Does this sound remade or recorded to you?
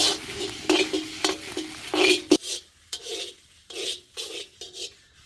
recorded